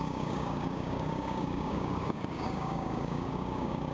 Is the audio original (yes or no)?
no